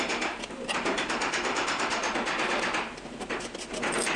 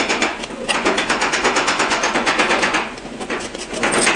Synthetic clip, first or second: second